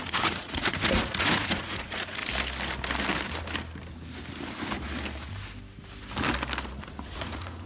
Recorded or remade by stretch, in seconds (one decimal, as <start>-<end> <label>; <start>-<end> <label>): 0.0-2.2 remade; 2.2-6.8 recorded; 6.8-7.7 remade